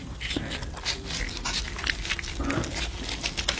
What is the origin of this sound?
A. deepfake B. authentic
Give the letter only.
B